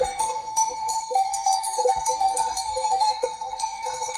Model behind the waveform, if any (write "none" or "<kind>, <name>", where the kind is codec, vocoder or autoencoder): codec, SNAC